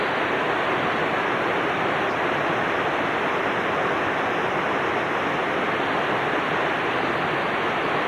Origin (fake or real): real